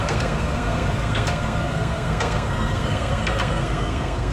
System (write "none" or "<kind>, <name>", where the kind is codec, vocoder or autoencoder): codec, SNAC